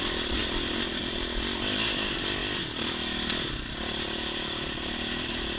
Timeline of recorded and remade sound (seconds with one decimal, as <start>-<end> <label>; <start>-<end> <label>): 0.0-5.6 recorded